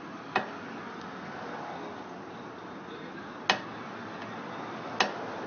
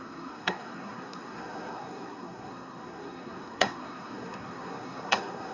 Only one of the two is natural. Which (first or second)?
first